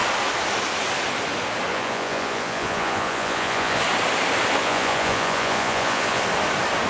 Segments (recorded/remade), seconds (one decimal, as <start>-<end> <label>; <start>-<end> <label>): 0.0-1.7 recorded; 1.7-3.8 remade; 3.8-4.6 recorded; 4.6-6.2 remade; 6.2-6.9 recorded